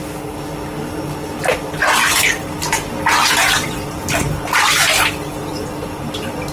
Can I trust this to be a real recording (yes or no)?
yes